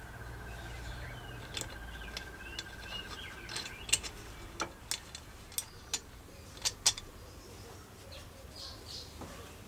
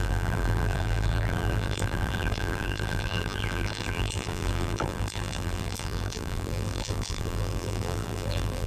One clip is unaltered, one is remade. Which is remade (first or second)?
second